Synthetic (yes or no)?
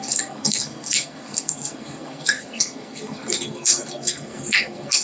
yes